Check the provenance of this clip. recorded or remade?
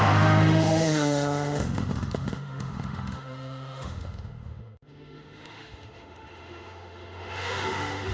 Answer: remade